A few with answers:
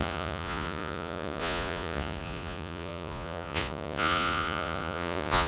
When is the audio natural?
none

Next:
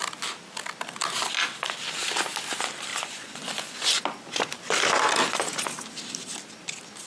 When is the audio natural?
0.0-2.9; 4.0-7.1

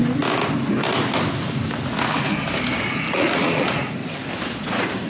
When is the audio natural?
0.0-3.1; 4.0-4.6

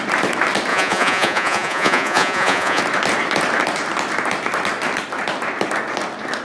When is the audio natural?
0.0-0.7; 2.8-6.4